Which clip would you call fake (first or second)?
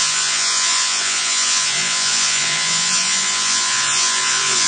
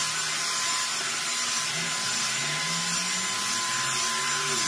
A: first